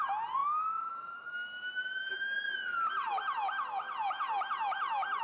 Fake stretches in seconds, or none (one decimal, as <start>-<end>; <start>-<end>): 0.4-1.9